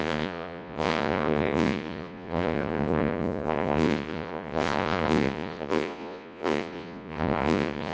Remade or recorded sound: remade